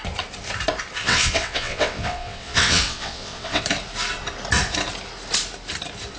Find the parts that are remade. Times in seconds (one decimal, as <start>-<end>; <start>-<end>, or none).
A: 1.0-3.6